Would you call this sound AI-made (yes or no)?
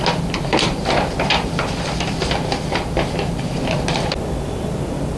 no